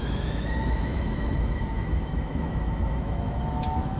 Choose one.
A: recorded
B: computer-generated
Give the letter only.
B